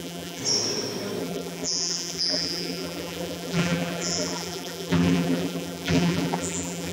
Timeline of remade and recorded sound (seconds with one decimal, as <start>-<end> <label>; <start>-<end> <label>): 0.0-0.4 remade; 0.4-1.2 recorded; 1.2-6.9 remade